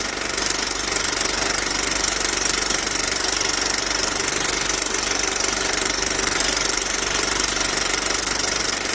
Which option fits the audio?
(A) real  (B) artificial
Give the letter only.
B